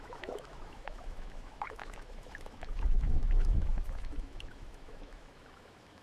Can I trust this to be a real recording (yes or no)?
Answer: no